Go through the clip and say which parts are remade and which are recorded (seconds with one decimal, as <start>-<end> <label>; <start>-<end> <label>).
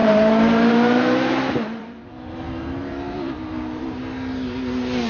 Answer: 0.0-1.0 remade; 1.0-1.8 recorded; 1.8-4.0 remade; 4.0-5.1 recorded